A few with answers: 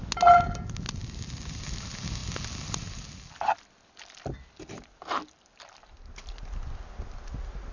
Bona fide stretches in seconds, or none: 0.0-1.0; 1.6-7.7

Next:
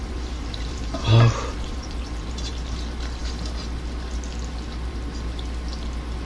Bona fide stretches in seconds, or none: 2.5-6.3

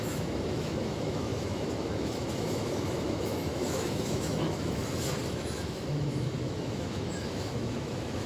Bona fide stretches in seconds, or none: 4.8-5.3

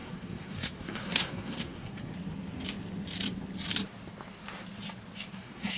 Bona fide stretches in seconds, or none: 2.1-5.3

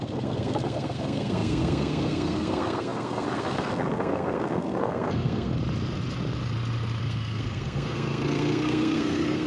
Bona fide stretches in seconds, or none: 5.5-7.0

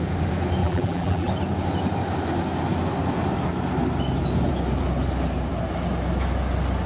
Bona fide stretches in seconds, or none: 0.0-0.6; 1.3-6.9